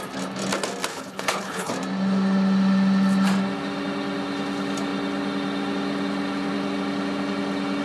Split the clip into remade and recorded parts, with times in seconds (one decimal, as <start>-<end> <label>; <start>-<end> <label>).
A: 0.0-0.9 recorded; 0.9-1.7 remade; 1.7-7.8 recorded

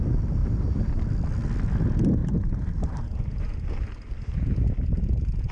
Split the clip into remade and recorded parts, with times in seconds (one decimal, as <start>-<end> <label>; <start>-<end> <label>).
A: 0.0-0.4 recorded; 0.4-1.0 remade; 1.0-2.2 recorded; 2.2-3.4 remade; 3.4-5.5 recorded

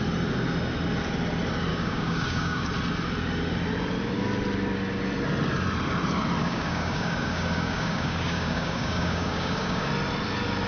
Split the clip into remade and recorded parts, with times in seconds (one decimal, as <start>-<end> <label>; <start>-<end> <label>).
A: 0.0-1.7 recorded; 1.7-2.7 remade; 2.7-6.4 recorded; 6.4-9.9 remade; 9.9-10.7 recorded

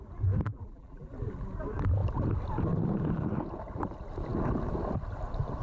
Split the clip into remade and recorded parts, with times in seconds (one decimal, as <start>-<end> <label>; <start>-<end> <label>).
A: 0.0-0.5 recorded; 0.5-1.1 remade; 1.1-5.6 recorded

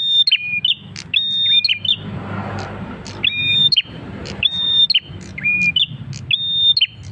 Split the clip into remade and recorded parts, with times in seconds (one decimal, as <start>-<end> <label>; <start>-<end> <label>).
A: 0.0-1.9 recorded; 1.9-2.5 remade; 2.5-3.6 recorded; 3.6-4.8 remade; 4.8-7.1 recorded

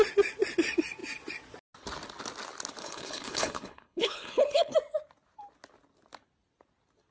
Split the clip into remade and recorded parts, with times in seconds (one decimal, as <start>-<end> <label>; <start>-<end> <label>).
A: 0.0-2.8 recorded; 2.8-4.7 remade; 4.7-7.1 recorded

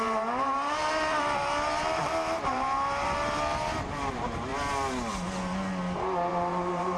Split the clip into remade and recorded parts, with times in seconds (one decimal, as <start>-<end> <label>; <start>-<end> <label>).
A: 0.0-2.0 remade; 2.0-2.5 recorded; 2.5-4.5 remade; 4.5-6.3 recorded; 6.3-7.0 remade